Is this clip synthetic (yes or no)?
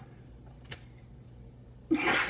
no